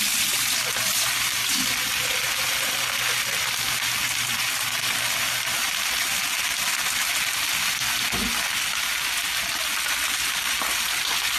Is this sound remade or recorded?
recorded